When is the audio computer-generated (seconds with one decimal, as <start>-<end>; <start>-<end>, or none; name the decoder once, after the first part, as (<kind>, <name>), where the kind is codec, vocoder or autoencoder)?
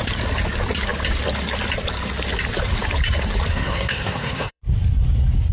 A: 3.5-4.6 (codec, SNAC)